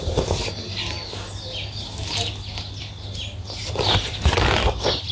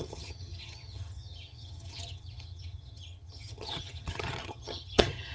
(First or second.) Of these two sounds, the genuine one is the first